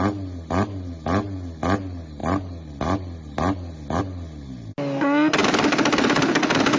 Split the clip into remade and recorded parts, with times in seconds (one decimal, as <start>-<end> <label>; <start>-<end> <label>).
0.0-6.8 recorded